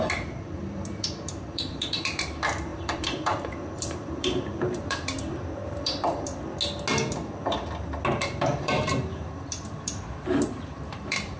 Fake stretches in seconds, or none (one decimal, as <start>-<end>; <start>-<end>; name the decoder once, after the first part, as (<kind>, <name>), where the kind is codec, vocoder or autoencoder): 0.0-6.3 (vocoder, BigVGAN v2); 8.2-11.4